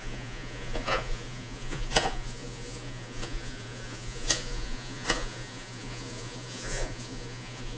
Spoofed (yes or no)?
yes